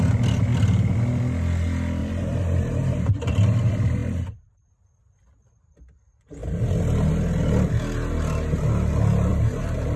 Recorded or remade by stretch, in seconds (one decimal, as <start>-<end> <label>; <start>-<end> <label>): 0.0-2.0 recorded; 2.0-3.3 remade; 3.3-4.0 recorded; 4.0-4.5 remade; 4.5-9.3 recorded; 9.3-10.0 remade